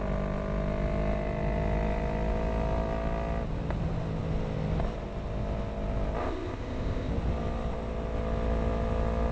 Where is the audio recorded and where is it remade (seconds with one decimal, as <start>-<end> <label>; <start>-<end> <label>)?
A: 0.0-6.2 recorded; 6.2-7.1 remade; 7.1-9.3 recorded